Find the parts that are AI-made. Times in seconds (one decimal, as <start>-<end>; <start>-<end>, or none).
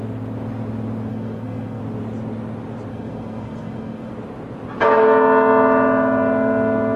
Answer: 1.1-1.8; 2.9-4.1